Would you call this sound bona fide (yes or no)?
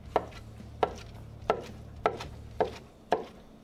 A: yes